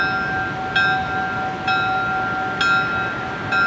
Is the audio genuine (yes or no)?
yes